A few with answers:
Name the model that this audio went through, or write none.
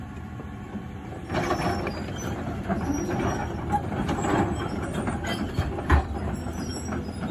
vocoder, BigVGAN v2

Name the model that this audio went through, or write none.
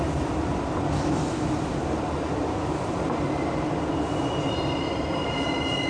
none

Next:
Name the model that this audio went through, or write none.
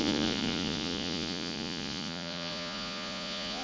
vocoder, Vocos